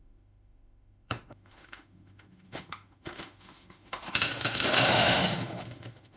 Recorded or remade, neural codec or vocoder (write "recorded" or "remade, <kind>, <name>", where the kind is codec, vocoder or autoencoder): remade, autoencoder, DAC-VAE